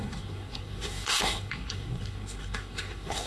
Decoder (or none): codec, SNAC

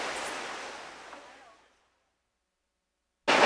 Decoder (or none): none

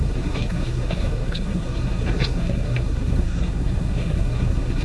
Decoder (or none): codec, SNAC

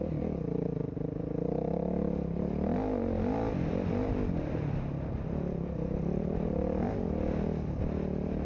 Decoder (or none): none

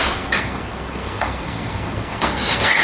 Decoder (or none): codec, SNAC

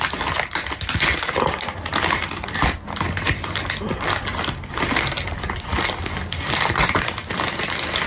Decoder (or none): none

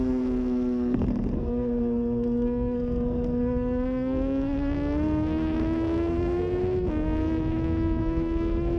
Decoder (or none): codec, SNAC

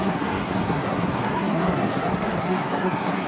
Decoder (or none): codec, SNAC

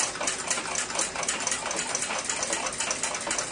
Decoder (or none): none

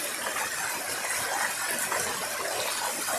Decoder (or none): none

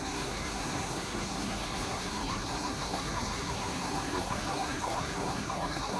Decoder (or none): codec, SNAC